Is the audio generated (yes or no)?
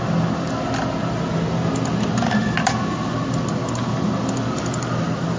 no